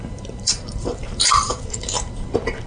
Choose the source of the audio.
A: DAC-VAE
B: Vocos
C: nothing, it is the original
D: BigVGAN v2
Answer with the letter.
D